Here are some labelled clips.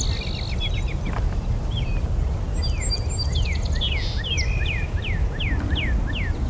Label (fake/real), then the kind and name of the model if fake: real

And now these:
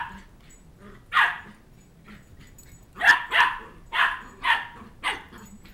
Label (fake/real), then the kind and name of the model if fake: real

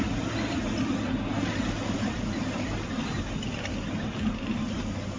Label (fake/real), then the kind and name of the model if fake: real